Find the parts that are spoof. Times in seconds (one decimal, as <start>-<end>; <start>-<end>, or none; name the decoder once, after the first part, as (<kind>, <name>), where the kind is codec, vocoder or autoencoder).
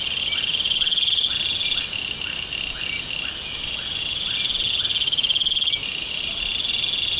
none